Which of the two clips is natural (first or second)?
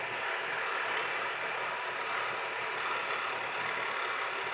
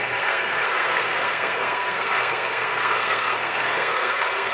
first